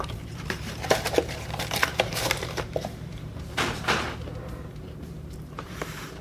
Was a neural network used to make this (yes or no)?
yes